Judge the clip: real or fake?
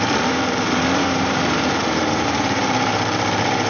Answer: fake